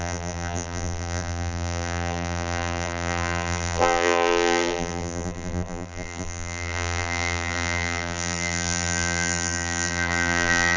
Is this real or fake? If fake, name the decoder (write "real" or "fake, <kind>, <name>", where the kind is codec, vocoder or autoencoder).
fake, vocoder, BigVGAN v2